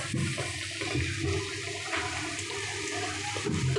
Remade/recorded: recorded